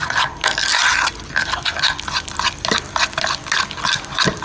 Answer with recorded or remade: recorded